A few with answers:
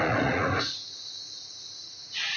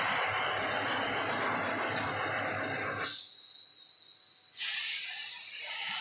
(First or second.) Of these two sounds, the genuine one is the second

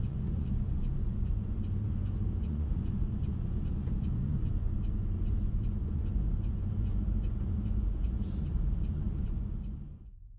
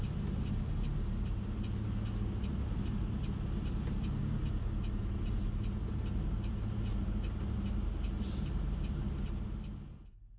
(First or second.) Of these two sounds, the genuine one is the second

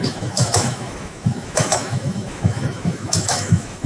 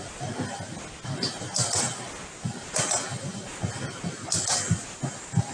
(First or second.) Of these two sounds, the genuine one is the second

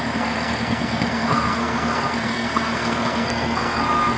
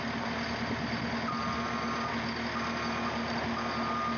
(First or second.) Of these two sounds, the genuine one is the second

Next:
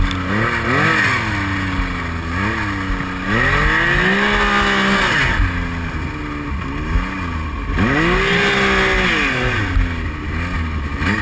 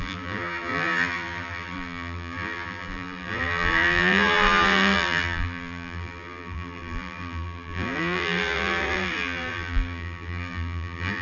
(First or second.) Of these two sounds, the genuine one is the first